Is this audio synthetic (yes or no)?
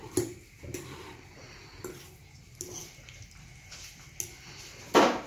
no